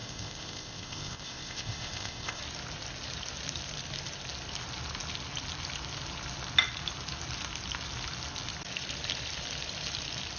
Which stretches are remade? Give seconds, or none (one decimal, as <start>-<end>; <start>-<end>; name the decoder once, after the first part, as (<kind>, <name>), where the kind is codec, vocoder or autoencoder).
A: 0.0-2.4 (codec, ZipCodec)